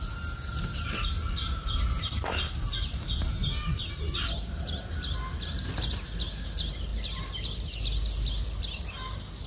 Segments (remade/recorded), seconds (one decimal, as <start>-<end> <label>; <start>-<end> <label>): 0.0-9.5 recorded